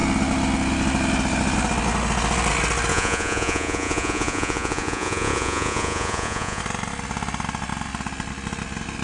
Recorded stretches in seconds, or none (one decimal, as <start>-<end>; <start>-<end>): 0.0-2.9; 6.6-9.0